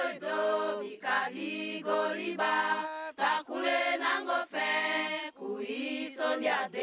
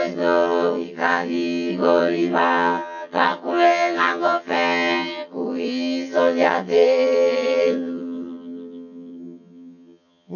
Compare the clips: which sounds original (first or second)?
first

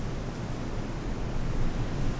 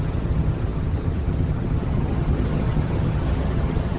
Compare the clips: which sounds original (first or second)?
first